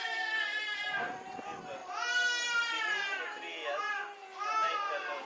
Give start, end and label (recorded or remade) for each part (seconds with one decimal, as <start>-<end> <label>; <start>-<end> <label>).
0.0-5.2 recorded